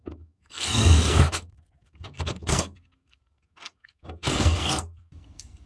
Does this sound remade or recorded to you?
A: remade